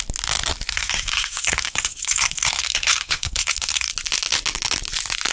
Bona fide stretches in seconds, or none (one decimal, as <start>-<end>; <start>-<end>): 0.0-0.7; 3.9-5.3